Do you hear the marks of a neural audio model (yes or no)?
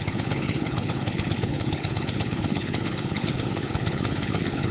yes